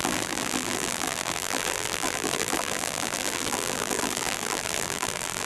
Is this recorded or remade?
remade